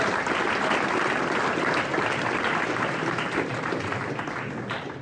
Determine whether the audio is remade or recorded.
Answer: remade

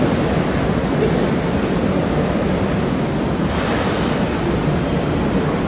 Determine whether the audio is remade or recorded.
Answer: recorded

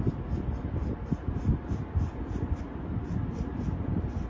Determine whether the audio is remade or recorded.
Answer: recorded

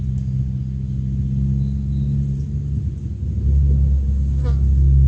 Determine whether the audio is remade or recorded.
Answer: recorded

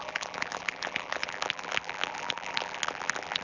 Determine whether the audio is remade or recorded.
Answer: remade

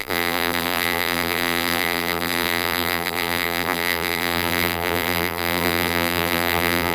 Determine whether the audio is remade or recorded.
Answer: remade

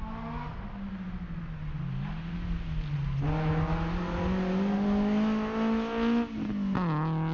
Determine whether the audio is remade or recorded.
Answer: recorded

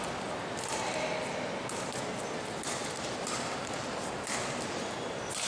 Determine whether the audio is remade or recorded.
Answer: recorded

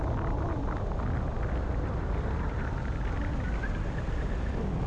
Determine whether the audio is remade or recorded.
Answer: recorded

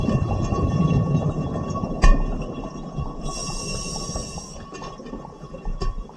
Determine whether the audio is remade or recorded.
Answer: remade